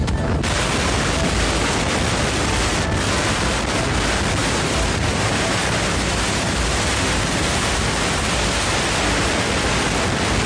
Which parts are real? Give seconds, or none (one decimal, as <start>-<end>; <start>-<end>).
0.0-4.4; 8.3-10.5